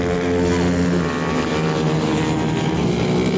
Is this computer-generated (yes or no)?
no